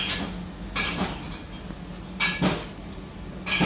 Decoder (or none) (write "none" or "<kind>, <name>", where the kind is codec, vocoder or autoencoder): none